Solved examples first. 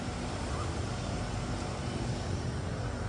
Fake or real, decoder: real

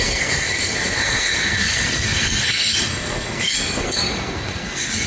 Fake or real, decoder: fake, codec, SNAC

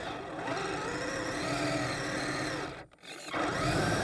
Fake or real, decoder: real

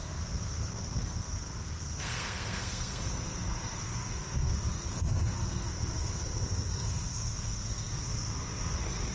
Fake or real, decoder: fake, codec, SNAC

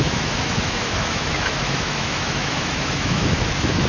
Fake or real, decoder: fake, autoencoder, DAC-VAE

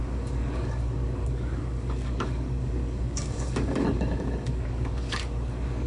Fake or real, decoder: fake, codec, DAC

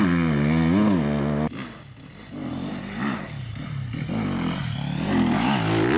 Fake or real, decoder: real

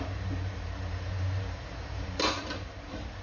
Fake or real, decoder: fake, vocoder, BigVGAN v2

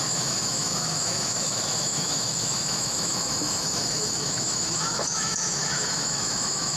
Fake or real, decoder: fake, autoencoder, DAC-VAE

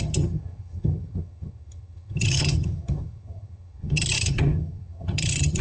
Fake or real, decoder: fake, vocoder, HiFi-GAN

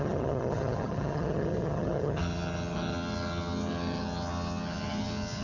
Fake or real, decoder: fake, vocoder, HiFi-GAN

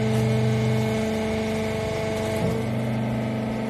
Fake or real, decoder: real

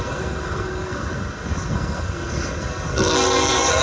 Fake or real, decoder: fake, codec, SNAC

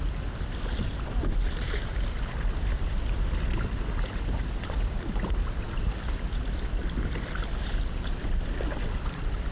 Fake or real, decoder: fake, vocoder, BigVGAN v2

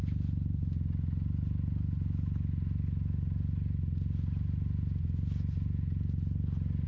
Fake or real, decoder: real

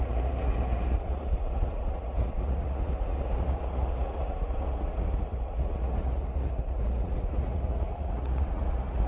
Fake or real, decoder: fake, vocoder, Vocos